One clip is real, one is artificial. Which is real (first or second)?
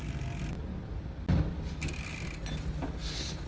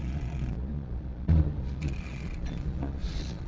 first